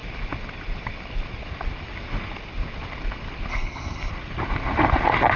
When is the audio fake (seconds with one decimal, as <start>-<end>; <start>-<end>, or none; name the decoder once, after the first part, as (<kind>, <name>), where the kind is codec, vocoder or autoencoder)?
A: 3.5-4.1 (codec, HILCodec)